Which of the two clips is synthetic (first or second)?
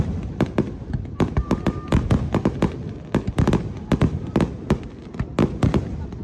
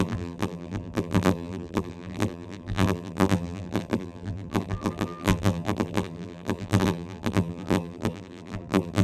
second